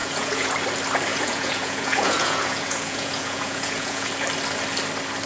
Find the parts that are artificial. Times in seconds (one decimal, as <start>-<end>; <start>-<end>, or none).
0.0-0.5; 1.1-4.1